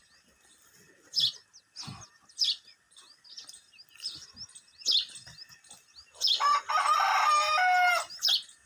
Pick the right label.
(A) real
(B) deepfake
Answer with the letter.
A